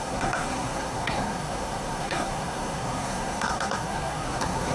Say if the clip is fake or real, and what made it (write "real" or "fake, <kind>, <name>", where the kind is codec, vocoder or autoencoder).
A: fake, codec, SNAC